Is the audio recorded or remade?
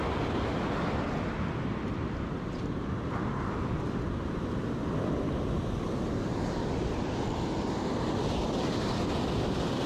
recorded